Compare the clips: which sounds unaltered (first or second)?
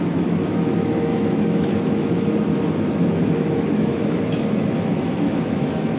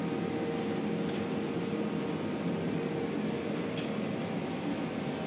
second